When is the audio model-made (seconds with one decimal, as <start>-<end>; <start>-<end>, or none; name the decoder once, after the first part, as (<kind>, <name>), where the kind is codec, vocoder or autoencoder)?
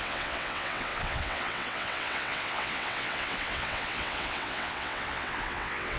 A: 0.0-6.0 (vocoder, WaveNeXt)